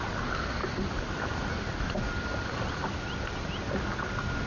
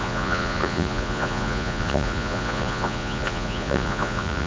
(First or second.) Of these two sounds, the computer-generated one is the second